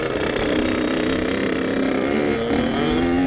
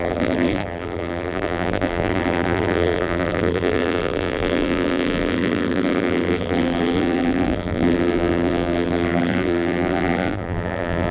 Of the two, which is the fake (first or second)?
second